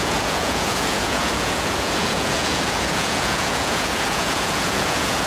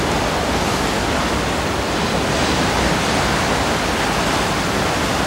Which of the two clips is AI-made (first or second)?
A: first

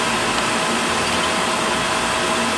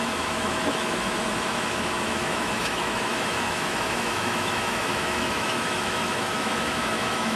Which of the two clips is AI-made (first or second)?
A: second